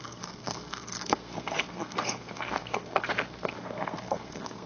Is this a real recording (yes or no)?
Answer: no